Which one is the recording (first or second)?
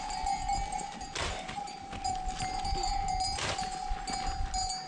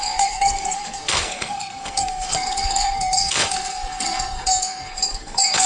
first